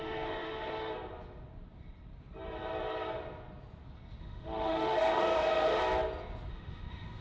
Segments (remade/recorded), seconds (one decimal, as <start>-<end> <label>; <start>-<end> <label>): 0.0-0.9 remade; 0.9-4.2 recorded; 4.2-5.8 remade; 5.8-6.5 recorded; 6.5-7.2 remade